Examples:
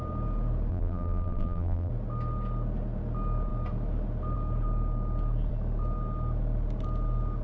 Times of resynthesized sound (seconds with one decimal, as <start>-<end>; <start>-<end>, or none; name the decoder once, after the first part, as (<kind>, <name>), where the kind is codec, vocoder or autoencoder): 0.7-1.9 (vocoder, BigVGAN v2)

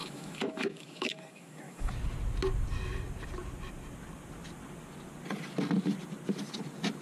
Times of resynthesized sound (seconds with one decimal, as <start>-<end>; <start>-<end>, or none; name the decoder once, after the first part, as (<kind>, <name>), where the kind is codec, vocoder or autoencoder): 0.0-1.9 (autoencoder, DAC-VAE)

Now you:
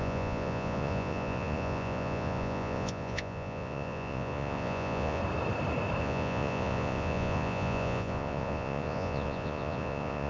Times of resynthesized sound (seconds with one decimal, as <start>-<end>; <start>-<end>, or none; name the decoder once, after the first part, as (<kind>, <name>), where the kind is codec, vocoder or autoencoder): 0.0-5.2 (vocoder, Vocos); 6.0-10.3

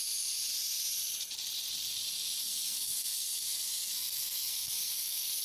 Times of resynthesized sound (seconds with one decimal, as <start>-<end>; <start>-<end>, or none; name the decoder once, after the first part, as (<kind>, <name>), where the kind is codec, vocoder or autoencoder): 2.4-5.4 (codec, SNAC)